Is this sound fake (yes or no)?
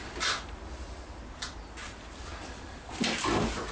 no